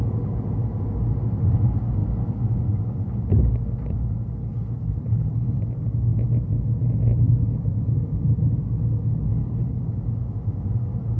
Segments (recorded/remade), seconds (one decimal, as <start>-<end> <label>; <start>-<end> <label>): 0.0-4.4 recorded; 4.4-5.6 remade; 5.6-9.3 recorded; 9.3-9.8 remade; 9.8-11.2 recorded